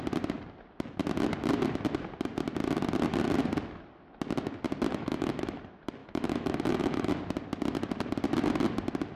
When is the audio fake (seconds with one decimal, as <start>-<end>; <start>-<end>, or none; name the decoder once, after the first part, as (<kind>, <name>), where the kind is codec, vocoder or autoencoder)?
4.9-5.6 (autoencoder, DAC-VAE); 6.0-7.1